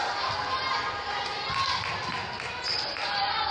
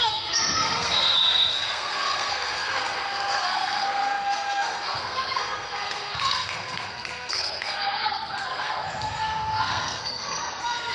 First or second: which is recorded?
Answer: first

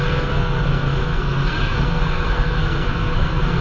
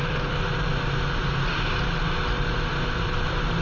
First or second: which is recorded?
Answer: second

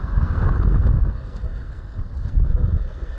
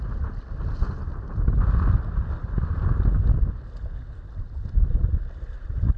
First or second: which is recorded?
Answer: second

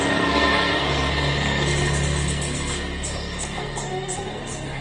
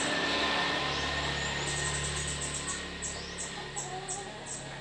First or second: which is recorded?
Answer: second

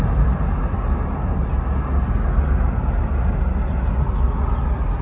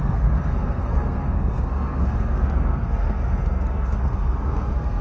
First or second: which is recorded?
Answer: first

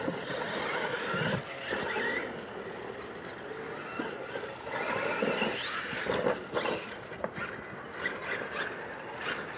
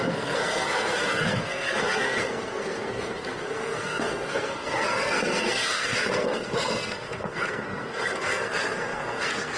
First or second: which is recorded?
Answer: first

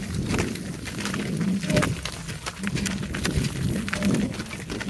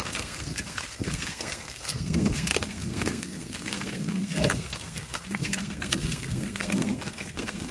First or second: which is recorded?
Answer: first